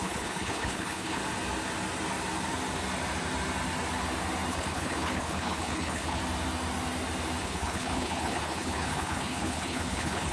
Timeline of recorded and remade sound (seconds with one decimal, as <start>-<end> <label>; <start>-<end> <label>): 0.0-1.2 remade; 1.2-4.5 recorded; 4.5-6.2 remade; 6.2-7.4 recorded; 7.4-10.3 remade